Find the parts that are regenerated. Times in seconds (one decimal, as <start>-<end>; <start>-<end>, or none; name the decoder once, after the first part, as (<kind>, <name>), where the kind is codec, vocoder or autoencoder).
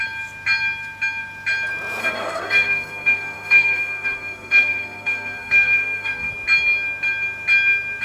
2.0-6.3 (codec, SNAC)